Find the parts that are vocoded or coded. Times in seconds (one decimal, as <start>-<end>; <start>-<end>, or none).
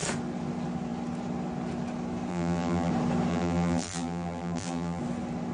2.3-2.9; 3.3-5.0